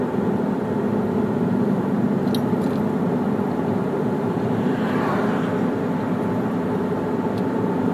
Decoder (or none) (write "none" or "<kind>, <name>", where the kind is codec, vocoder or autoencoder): none